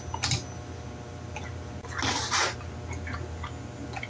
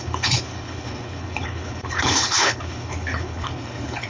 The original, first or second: first